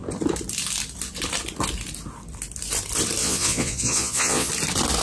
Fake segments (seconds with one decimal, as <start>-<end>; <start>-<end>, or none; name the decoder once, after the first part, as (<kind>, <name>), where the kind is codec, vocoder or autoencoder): 3.2-4.5 (vocoder, Vocos)